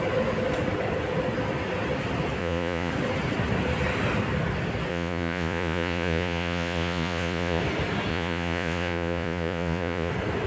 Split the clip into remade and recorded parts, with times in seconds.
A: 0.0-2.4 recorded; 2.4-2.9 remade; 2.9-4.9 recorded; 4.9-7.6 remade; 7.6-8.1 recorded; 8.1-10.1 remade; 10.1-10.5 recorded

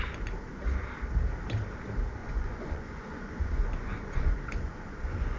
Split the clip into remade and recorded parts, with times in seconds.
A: 0.0-2.2 recorded; 2.2-5.4 remade

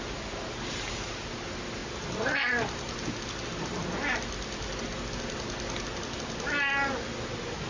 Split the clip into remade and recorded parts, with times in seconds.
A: 0.0-7.7 recorded

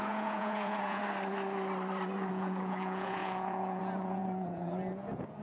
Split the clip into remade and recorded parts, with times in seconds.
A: 0.0-1.0 remade; 1.0-2.3 recorded; 2.3-5.4 remade

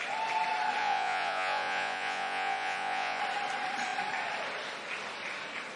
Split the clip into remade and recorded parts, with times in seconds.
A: 0.0-0.8 recorded; 0.8-3.2 remade; 3.2-5.8 recorded